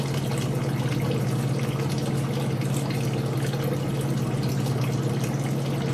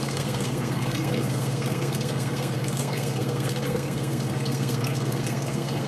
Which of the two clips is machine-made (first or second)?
second